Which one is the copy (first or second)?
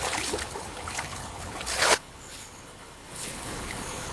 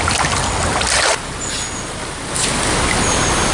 first